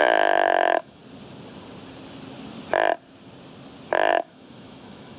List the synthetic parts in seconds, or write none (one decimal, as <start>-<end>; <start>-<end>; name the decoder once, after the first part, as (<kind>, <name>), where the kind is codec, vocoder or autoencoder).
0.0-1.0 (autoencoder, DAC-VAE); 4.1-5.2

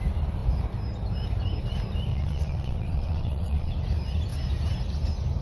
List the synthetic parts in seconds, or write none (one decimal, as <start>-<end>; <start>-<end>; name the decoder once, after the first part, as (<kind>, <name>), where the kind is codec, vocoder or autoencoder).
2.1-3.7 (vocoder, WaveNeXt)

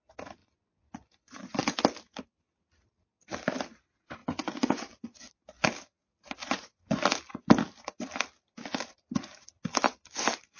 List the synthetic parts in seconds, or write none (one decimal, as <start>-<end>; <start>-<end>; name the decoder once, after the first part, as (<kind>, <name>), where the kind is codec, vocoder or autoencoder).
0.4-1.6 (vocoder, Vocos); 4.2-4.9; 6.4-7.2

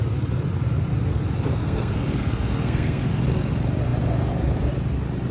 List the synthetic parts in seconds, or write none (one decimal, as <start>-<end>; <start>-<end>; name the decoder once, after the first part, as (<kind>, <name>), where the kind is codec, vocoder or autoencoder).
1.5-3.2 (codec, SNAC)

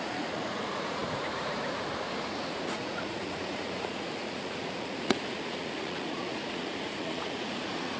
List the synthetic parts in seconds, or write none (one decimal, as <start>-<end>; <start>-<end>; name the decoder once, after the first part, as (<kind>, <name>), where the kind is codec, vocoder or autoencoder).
0.0-8.0 (vocoder, Vocos)

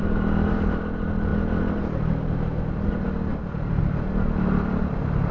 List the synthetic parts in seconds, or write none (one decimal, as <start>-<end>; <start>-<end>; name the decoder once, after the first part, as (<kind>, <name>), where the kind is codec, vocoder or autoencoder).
none

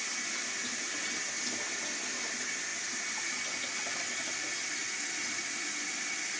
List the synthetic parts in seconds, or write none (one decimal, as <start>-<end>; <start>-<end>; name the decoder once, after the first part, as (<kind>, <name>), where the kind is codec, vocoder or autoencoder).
none

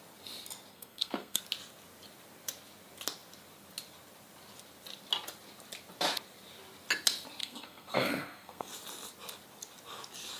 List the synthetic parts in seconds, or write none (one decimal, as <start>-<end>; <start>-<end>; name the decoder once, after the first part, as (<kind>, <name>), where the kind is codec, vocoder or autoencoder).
0.7-1.4 (codec, SNAC); 7.4-8.7